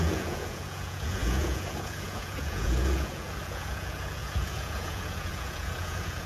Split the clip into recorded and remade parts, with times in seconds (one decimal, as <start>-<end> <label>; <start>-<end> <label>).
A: 0.0-6.3 remade